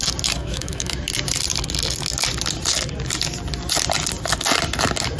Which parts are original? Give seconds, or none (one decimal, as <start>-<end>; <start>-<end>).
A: 0.0-0.4; 1.0-5.2